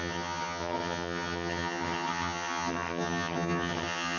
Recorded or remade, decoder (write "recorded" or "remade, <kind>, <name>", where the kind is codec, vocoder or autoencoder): remade, vocoder, HiFi-GAN